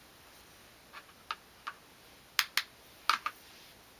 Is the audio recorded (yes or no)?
yes